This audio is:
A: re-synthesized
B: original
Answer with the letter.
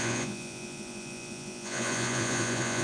A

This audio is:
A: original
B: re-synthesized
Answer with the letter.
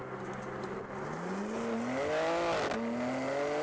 A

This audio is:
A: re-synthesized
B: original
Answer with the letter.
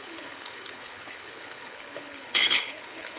A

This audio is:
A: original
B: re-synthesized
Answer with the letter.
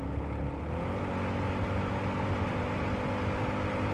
A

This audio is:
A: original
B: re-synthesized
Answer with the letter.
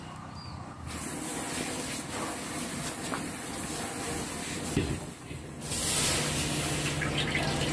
A